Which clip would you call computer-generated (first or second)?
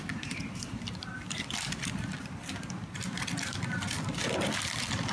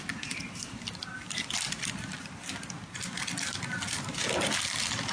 first